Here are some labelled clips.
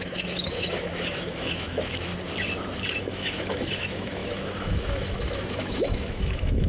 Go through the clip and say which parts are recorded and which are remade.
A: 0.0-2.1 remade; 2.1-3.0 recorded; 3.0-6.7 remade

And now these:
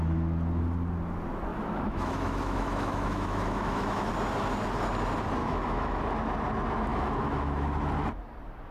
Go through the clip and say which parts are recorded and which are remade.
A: 0.0-1.5 recorded; 1.5-4.1 remade; 4.1-5.4 recorded; 5.4-6.0 remade; 6.0-6.9 recorded; 6.9-7.7 remade; 7.7-8.7 recorded

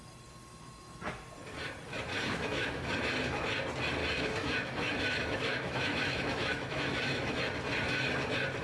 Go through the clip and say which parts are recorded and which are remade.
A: 0.0-2.1 recorded; 2.1-2.9 remade; 2.9-4.0 recorded; 4.0-7.4 remade; 7.4-8.6 recorded

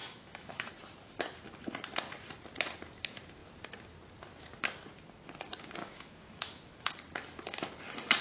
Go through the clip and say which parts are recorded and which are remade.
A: 0.0-0.7 remade; 0.7-5.8 recorded; 5.8-6.9 remade; 6.9-8.2 recorded

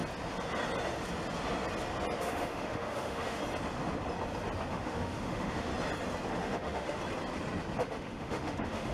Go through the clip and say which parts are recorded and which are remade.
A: 0.0-2.2 recorded; 2.2-3.4 remade; 3.4-4.7 recorded; 4.7-5.7 remade; 5.7-6.3 recorded; 6.3-7.0 remade; 7.0-7.8 recorded; 7.8-8.9 remade

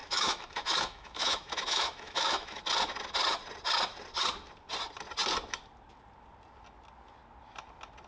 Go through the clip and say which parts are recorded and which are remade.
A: 0.0-2.6 remade; 2.6-8.1 recorded

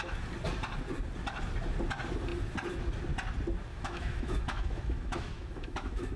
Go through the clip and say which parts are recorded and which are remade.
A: 0.0-3.7 recorded; 3.7-6.2 remade

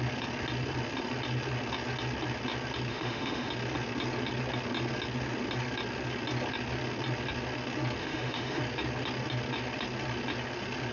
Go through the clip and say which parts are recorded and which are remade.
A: 0.0-2.9 recorded; 2.9-3.5 remade; 3.5-8.0 recorded; 8.0-8.6 remade; 8.6-10.9 recorded